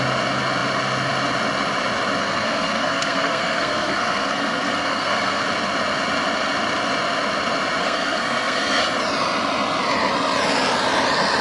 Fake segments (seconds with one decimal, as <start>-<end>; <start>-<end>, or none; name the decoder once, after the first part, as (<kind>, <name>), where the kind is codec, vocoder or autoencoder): 2.2-5.4 (codec, SNAC); 7.8-8.8

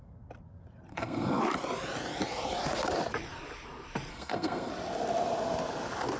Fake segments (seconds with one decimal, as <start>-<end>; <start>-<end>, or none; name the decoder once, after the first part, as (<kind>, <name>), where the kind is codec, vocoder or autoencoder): 0.9-1.4 (codec, SNAC); 4.1-4.7

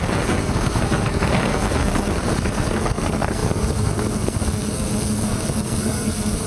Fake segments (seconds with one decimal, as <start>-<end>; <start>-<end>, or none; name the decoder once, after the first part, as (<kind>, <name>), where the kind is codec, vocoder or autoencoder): 0.0-6.5 (codec, SNAC)

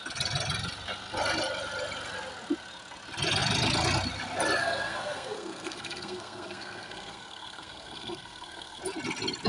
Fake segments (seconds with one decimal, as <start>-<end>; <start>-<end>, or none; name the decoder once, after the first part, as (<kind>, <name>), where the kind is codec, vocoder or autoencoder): 4.6-8.8 (codec, SNAC)

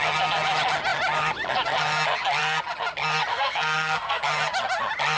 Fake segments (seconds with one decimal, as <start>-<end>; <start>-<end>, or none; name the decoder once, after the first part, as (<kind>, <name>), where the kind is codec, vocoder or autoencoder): 3.3-4.2 (codec, SNAC)

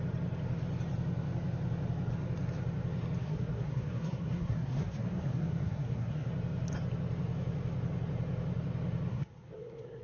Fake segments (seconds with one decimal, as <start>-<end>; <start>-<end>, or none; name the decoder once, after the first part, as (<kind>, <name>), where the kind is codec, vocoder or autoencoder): 3.2-6.3 (codec, SNAC); 9.1-10.0

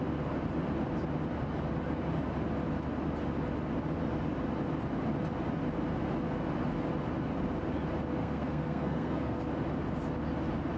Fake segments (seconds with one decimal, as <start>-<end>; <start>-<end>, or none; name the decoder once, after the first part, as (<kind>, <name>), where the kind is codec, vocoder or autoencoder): 8.2-9.4 (codec, SNAC)